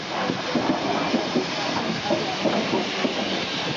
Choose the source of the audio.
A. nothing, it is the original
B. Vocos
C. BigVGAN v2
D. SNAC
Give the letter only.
A